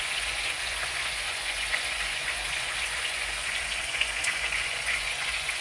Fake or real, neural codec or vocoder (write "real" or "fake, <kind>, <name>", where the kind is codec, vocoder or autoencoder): fake, vocoder, Vocos